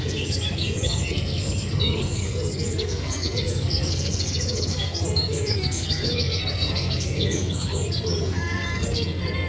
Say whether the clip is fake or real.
fake